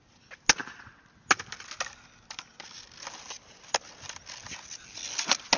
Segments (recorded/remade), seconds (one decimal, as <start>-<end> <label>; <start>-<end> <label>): 0.0-5.6 recorded